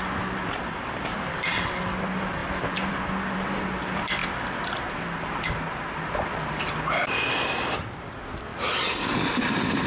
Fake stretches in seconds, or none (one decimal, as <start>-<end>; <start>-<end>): 0.0-4.2; 7.3-9.9